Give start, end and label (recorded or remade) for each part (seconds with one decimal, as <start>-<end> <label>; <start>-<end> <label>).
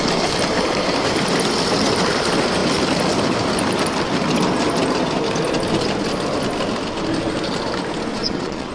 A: 0.0-8.1 recorded; 8.1-8.7 remade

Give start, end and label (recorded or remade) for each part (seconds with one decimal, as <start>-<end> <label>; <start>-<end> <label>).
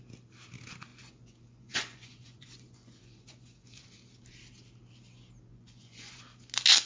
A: 0.0-0.9 recorded; 0.9-3.8 remade; 3.8-5.5 recorded; 5.5-6.2 remade; 6.2-6.9 recorded